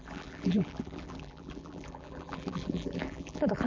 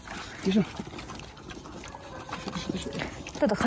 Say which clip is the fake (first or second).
first